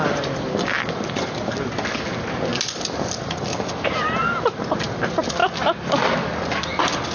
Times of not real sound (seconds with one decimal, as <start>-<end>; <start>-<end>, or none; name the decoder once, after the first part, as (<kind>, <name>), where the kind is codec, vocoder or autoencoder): none